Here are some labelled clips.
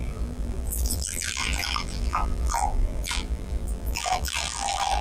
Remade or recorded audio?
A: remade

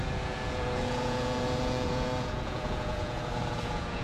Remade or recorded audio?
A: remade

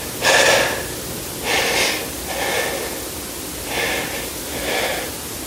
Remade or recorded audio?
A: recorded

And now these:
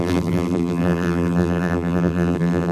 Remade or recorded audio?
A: remade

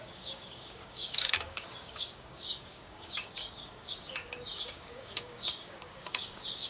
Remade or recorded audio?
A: remade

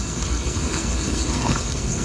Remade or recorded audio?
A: remade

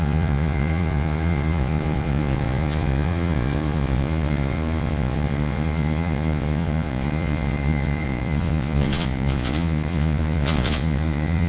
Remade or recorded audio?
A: remade